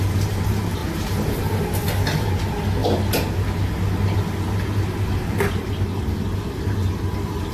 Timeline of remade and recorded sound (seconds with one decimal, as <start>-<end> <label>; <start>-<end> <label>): 0.0-0.8 recorded; 0.8-1.6 remade; 1.6-7.5 recorded